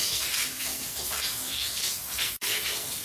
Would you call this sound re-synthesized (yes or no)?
yes